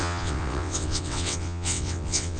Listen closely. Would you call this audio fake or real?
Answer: fake